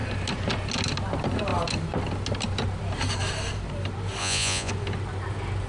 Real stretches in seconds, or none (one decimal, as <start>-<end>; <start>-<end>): 0.0-4.2; 4.7-5.7